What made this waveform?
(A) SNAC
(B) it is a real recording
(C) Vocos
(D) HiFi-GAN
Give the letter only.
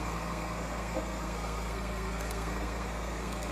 A